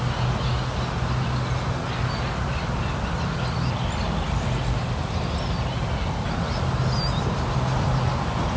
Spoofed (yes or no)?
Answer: no